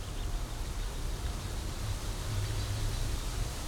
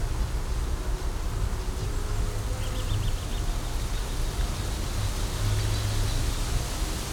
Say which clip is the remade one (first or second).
first